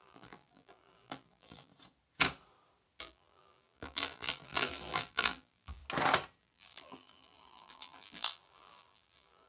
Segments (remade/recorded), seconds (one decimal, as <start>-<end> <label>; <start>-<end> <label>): 0.0-1.7 remade; 1.7-3.0 recorded; 3.0-5.8 remade; 5.8-6.4 recorded; 6.4-9.5 remade